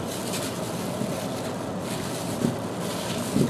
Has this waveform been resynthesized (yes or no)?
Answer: no